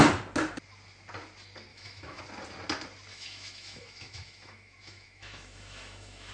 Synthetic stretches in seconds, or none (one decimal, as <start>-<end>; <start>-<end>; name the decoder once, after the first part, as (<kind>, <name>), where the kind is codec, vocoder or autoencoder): 1.7-2.2 (autoencoder, DAC-VAE); 3.1-6.3